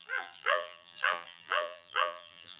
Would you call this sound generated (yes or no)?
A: yes